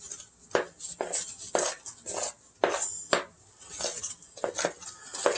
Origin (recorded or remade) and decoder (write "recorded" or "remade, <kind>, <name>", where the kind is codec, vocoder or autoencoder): recorded